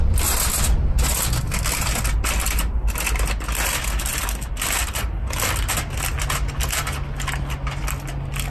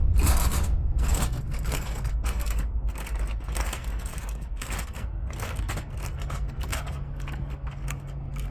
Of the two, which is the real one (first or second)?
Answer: first